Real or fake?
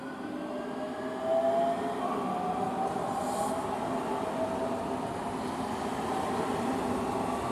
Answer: real